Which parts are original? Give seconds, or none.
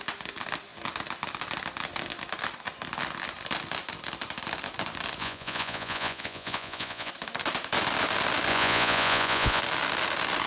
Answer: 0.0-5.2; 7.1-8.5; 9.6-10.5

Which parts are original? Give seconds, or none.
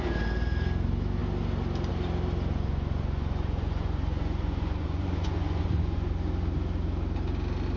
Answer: 0.0-2.5; 6.1-7.8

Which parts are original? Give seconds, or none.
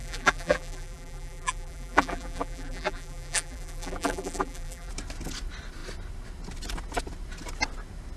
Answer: 4.9-8.2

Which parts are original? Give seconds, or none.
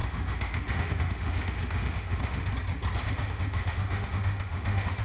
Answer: 2.5-3.0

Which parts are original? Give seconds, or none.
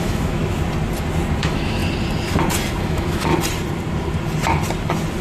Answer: 0.4-1.4; 1.8-2.8; 3.3-5.2